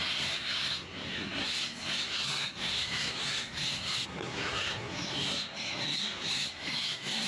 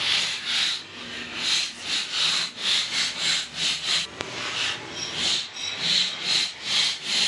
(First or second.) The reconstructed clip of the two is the first